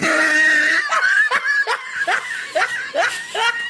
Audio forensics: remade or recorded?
recorded